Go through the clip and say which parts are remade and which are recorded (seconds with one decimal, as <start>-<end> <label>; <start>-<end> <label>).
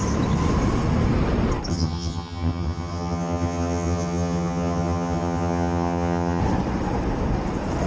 0.0-1.7 recorded; 1.7-6.4 remade; 6.4-7.9 recorded